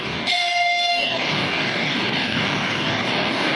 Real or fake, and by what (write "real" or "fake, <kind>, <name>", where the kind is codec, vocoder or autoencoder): fake, codec, DAC